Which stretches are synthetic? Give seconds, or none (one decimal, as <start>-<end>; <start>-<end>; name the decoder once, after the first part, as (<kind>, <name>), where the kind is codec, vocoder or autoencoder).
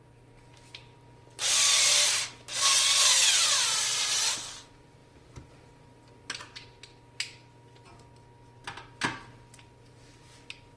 none